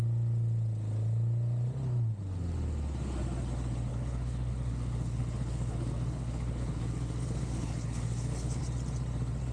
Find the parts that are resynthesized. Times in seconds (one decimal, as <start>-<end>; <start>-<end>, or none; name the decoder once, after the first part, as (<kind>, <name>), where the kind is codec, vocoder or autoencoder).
3.9-8.6 (codec, HILCodec)